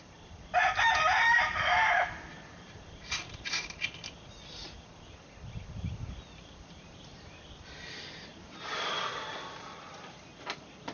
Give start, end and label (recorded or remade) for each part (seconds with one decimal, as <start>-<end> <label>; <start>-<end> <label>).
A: 0.0-1.2 recorded; 1.2-3.8 remade; 3.8-8.3 recorded; 8.3-8.9 remade; 8.9-10.9 recorded